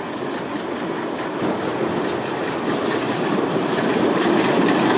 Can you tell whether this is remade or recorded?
recorded